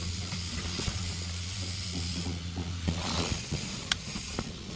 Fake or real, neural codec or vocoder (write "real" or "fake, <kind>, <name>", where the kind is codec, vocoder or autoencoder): fake, vocoder, Vocos